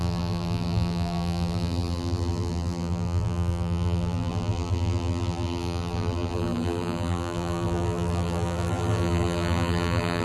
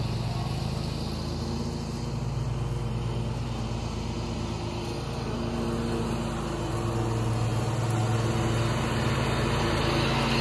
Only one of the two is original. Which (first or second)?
second